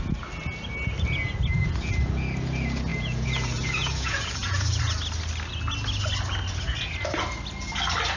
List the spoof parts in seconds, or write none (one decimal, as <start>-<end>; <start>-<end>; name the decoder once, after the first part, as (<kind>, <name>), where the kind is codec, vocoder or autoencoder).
2.9-4.8 (vocoder, Vocos)